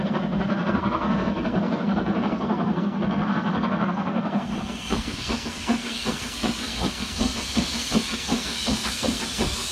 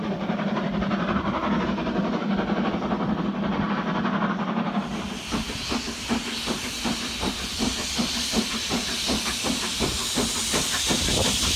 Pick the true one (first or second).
second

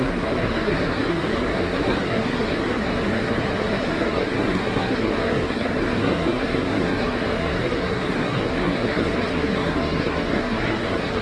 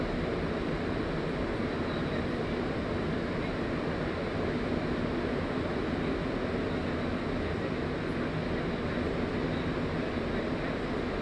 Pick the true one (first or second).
second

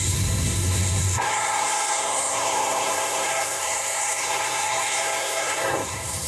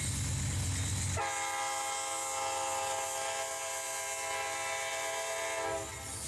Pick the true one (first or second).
second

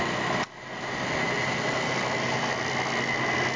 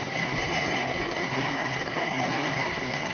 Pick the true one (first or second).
first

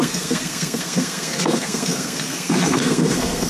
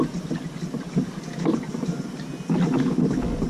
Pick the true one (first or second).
second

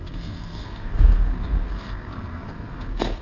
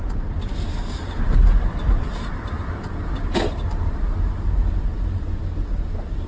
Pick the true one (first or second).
second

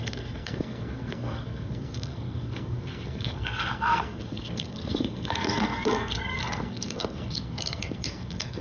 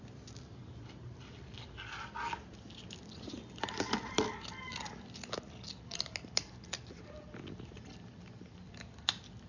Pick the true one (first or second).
second